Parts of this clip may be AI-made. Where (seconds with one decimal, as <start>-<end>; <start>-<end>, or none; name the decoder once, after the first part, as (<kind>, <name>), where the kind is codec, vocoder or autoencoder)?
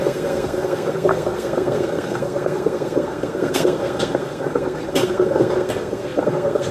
0.0-6.7 (codec, SNAC)